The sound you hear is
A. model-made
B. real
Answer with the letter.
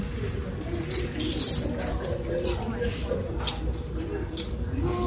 B